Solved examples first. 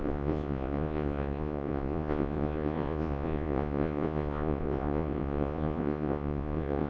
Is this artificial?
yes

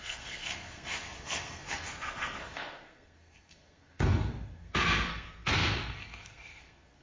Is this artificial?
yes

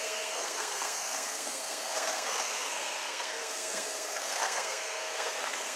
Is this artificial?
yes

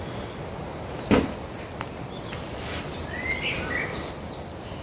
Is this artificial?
no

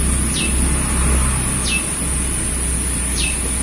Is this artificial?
no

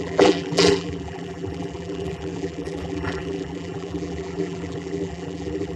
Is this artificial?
yes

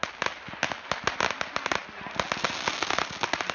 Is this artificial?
no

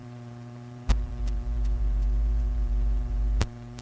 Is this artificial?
yes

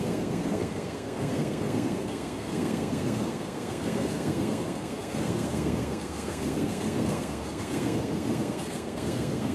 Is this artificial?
yes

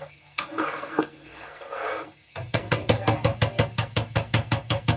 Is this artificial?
yes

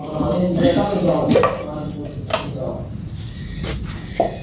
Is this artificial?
no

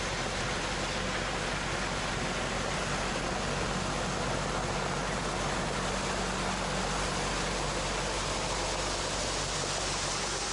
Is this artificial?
no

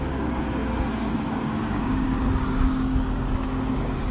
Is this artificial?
yes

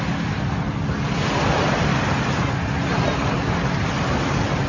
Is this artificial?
no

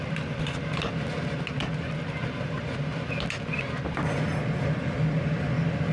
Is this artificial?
no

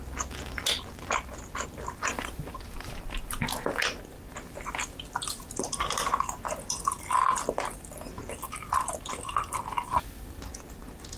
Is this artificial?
no